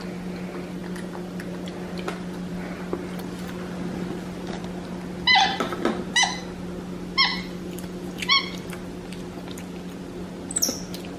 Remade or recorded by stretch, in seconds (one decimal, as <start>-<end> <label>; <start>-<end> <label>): 0.0-7.3 recorded; 7.3-8.7 remade; 8.7-11.2 recorded